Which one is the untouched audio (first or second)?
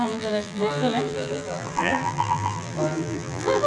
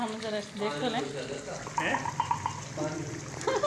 second